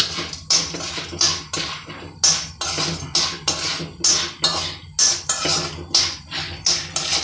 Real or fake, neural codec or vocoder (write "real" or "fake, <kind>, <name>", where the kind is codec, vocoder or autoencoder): real